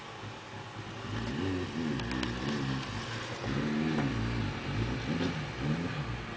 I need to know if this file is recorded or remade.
recorded